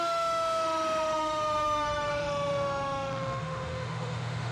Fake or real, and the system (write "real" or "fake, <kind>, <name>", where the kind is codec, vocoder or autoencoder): fake, autoencoder, DAC-VAE